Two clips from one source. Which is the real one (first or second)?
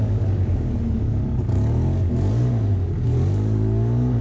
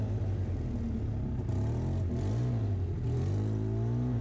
second